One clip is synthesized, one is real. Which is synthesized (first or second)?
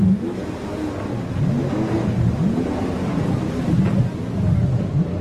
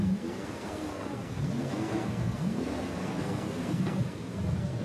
second